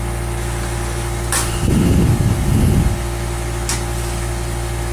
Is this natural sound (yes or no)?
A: yes